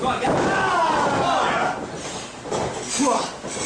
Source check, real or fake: real